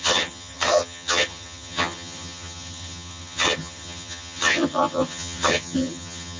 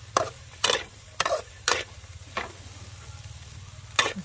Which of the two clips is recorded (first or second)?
second